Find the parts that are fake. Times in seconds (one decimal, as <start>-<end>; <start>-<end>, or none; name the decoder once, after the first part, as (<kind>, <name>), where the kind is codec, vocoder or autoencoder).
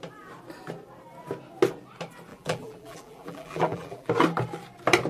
2.3-4.1 (vocoder, BigVGAN v2)